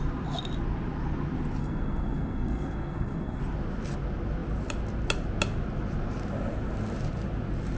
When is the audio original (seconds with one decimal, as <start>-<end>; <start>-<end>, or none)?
0.0-1.6; 3.4-7.8